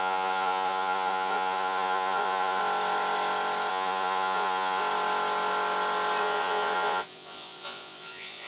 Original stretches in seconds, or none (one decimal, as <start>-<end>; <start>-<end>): 2.6-3.7; 4.8-6.2

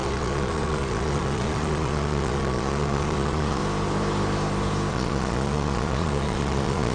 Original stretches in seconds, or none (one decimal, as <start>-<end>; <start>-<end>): 3.6-4.9